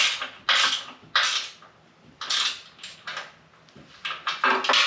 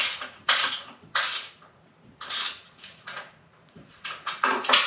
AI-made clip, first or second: second